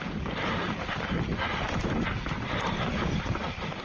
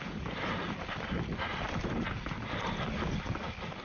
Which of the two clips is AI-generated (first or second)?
first